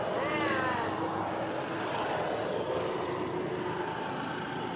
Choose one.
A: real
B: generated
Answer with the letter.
A